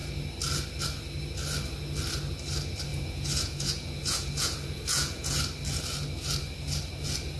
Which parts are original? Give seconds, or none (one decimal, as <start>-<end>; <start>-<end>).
0.0-2.9; 5.4-7.4